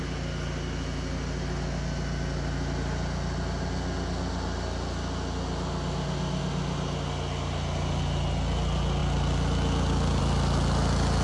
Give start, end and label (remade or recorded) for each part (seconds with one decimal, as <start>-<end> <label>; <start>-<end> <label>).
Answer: 0.0-11.2 recorded